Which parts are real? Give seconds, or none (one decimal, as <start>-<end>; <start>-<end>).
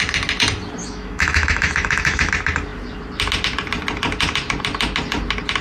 0.0-0.8; 2.3-5.6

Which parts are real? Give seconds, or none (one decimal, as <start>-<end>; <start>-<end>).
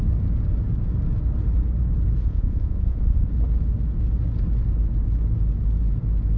0.0-2.2; 3.3-6.4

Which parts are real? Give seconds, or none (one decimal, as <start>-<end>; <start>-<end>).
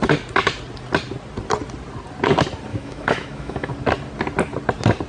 0.0-2.7; 3.7-5.1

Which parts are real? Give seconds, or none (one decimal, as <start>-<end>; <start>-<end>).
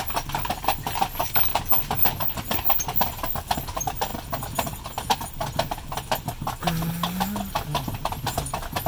0.0-8.9